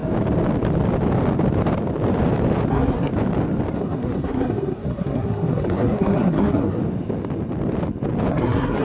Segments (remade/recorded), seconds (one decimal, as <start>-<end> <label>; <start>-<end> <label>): 0.0-2.7 recorded; 2.7-3.1 remade; 3.1-3.7 recorded; 3.7-6.8 remade; 6.8-8.3 recorded; 8.3-8.8 remade